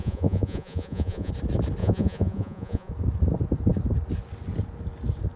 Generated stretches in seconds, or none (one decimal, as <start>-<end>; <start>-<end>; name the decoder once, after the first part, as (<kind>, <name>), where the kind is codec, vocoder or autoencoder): 0.0-1.3 (vocoder, Vocos); 1.8-2.9